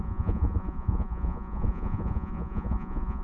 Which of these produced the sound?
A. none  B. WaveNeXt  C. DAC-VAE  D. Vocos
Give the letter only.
D